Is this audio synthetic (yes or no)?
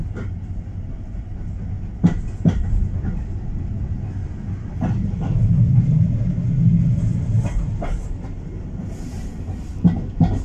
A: no